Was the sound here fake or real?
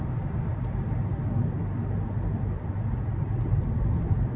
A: real